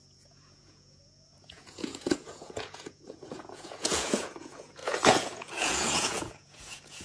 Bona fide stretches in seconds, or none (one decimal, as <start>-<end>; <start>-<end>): none